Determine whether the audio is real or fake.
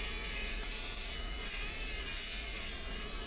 fake